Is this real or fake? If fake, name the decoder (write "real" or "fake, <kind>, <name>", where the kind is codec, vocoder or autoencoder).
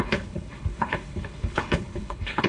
fake, codec, HILCodec